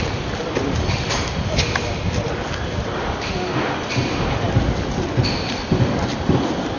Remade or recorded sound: recorded